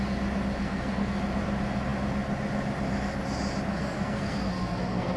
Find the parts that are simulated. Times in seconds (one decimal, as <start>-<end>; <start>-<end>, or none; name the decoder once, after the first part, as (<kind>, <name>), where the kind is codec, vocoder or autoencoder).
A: 0.6-1.2 (codec, SNAC); 3.7-5.2